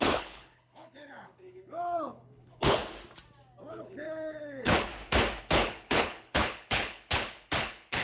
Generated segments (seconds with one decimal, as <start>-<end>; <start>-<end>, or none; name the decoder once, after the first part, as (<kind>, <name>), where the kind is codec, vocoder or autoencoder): 0.0-2.8 (codec, HILCodec); 3.7-4.9; 5.4-8.0